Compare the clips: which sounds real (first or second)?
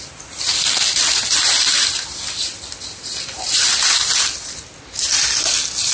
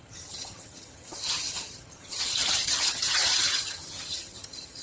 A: first